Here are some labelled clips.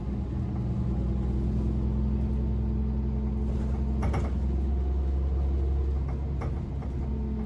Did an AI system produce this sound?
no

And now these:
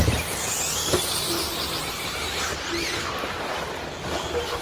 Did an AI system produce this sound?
no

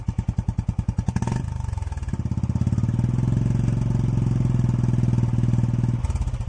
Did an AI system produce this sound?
no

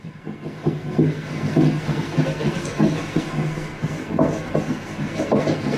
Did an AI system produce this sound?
yes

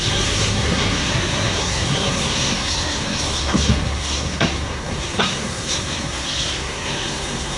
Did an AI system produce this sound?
yes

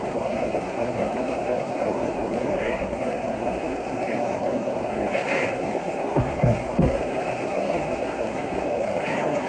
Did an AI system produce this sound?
yes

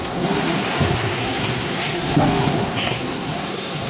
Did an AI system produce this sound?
yes